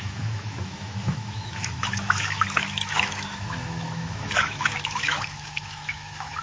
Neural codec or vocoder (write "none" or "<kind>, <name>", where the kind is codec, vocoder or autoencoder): autoencoder, DAC-VAE